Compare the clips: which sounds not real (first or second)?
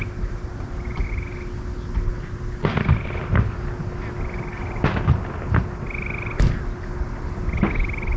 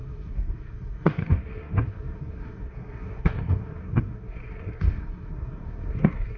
second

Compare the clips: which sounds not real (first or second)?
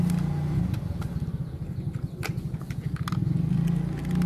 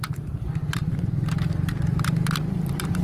second